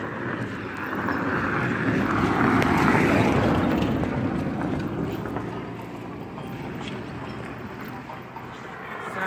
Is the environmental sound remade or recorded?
recorded